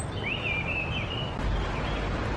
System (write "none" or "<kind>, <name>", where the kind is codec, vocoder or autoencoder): none